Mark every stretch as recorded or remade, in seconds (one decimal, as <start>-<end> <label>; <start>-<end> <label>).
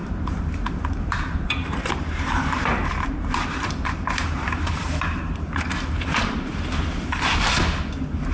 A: 0.0-1.9 remade; 1.9-2.7 recorded; 2.7-7.0 remade; 7.0-8.3 recorded